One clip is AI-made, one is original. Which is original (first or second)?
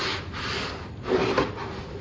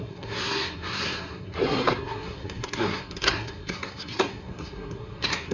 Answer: first